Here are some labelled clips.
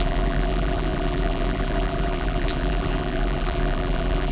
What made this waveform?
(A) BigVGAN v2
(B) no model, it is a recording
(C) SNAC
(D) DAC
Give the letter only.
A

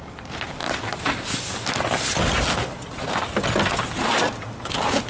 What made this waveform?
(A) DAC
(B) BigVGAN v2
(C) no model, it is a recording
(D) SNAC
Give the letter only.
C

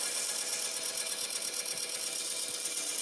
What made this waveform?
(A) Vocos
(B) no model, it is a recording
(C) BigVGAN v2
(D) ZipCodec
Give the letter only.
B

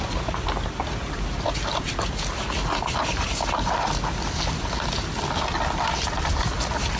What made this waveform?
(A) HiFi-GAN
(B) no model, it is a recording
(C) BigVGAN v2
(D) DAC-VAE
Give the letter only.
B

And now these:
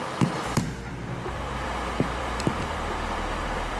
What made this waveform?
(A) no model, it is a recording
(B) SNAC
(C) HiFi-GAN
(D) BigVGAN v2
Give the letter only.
D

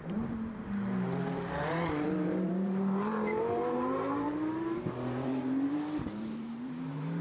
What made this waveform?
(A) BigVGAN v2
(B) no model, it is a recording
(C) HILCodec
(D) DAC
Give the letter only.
A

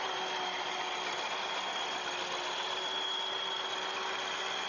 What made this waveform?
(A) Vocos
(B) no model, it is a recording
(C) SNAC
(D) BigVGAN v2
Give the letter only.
B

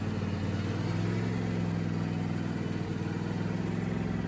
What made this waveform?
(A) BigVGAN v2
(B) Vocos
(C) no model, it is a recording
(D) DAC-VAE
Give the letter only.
C